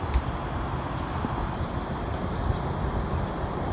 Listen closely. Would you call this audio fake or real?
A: real